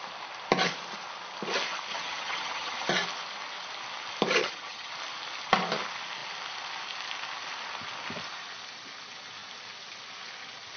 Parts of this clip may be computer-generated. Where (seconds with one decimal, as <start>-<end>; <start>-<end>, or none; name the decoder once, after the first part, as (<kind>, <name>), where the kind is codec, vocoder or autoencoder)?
1.9-2.9 (vocoder, HiFi-GAN); 4.4-4.9